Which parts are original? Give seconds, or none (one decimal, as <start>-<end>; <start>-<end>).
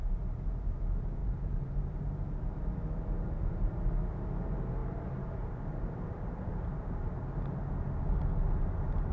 0.0-1.2; 2.5-4.8; 7.3-9.1